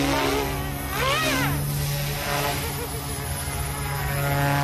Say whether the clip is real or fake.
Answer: real